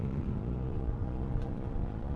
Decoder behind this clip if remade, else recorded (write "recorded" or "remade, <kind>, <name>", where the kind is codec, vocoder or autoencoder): remade, vocoder, Vocos